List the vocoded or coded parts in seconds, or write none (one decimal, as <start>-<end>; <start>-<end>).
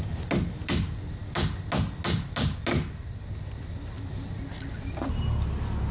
none